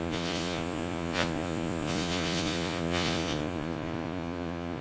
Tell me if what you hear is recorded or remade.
remade